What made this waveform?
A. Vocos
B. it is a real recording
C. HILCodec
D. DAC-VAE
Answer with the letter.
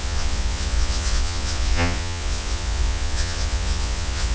A